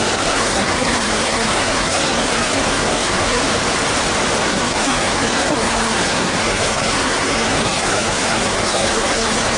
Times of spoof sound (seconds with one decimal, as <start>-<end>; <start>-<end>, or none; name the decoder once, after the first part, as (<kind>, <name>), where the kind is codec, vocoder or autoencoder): 0.0-3.4 (codec, SNAC); 4.4-9.6